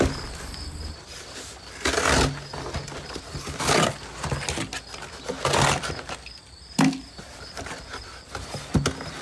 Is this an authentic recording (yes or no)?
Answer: yes